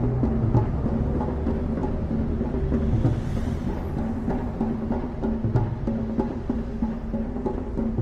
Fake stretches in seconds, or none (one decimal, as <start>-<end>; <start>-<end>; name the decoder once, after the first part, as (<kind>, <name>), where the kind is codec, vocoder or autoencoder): none